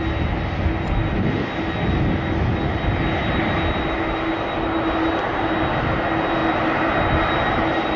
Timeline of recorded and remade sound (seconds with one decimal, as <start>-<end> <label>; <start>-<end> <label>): 0.0-8.0 recorded